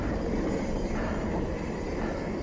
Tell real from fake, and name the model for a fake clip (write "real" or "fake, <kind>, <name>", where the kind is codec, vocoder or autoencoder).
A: real